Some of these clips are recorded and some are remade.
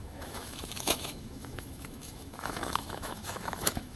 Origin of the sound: remade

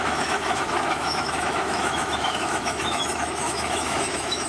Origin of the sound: remade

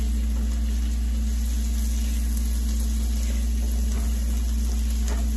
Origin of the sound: recorded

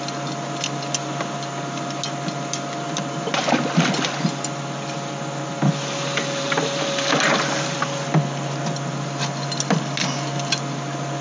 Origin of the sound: recorded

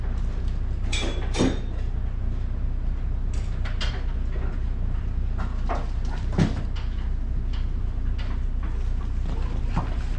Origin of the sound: recorded